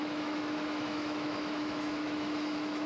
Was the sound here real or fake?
fake